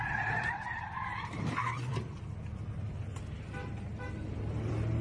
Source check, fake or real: fake